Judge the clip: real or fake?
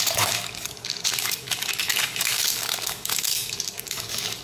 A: fake